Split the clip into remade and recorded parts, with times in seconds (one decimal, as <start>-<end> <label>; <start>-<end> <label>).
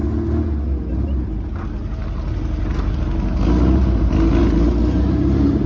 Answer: 0.0-5.7 recorded